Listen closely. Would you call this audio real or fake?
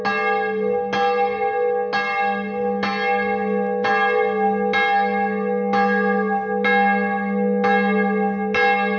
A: real